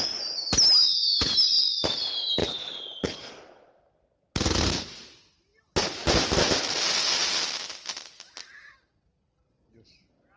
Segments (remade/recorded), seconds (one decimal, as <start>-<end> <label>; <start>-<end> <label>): 0.0-2.4 recorded; 2.4-3.3 remade; 3.3-10.4 recorded